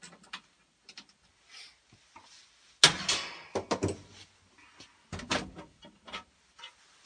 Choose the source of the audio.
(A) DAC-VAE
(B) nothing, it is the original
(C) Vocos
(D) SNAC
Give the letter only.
B